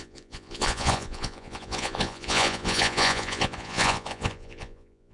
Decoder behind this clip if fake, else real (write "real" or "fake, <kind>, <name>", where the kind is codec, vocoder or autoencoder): fake, vocoder, Vocos